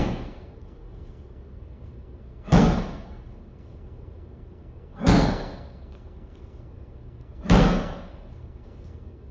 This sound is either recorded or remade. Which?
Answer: remade